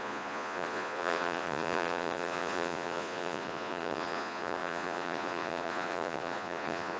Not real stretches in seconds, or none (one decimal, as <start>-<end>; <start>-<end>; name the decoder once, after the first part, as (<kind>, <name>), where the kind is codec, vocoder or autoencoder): 0.0-7.0 (vocoder, Vocos)